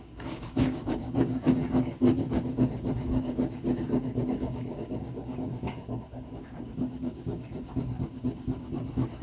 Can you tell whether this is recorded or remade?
remade